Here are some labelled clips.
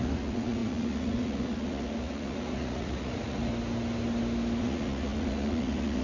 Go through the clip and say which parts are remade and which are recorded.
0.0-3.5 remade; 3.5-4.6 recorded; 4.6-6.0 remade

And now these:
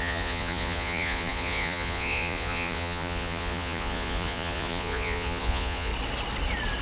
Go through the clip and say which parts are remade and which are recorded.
0.0-5.9 remade; 5.9-6.8 recorded

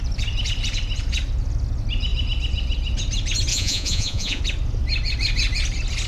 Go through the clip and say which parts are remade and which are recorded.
0.0-3.5 recorded; 3.5-4.4 remade; 4.4-6.1 recorded